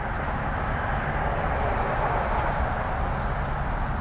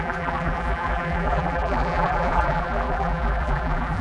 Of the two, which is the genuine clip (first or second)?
first